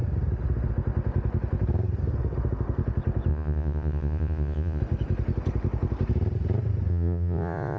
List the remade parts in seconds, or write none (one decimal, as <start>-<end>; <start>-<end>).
3.3-4.8; 6.9-7.8

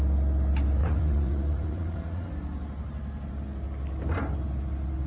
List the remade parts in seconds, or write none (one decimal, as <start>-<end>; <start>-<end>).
0.8-2.3

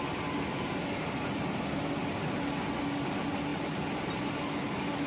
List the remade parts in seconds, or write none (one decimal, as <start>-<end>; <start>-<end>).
none

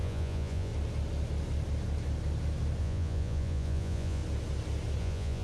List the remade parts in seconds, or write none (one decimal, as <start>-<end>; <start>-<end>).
0.0-0.7; 2.8-4.2; 5.0-5.4

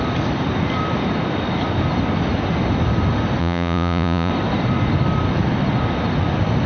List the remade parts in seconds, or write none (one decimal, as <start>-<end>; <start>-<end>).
3.4-4.3